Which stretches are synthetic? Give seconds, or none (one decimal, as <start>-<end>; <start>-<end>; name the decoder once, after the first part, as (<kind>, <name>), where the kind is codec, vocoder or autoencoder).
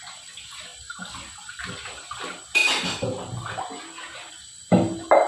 none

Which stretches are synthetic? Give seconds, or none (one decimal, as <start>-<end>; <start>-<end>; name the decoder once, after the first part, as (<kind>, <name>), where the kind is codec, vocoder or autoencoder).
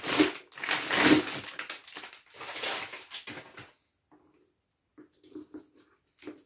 none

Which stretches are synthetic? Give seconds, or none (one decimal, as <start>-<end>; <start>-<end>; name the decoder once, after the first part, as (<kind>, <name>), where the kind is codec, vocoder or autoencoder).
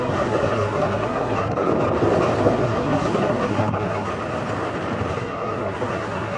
0.0-1.7 (codec, SNAC); 2.4-4.1; 5.1-6.4